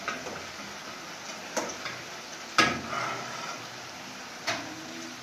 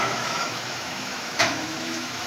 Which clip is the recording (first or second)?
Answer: first